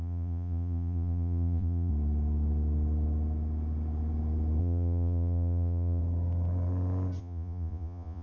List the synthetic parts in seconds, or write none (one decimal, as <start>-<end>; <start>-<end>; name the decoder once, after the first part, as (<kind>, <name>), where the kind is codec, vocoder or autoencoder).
0.0-1.9 (vocoder, Vocos); 4.6-6.0; 7.2-8.2